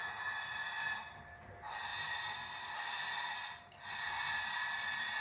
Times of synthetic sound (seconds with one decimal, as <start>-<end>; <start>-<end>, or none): 0.0-0.7